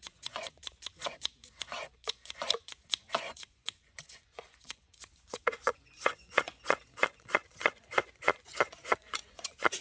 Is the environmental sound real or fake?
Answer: fake